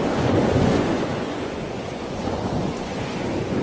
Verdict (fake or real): fake